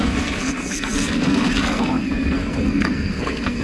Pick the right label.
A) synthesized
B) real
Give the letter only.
A